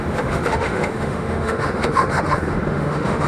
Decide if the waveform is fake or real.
fake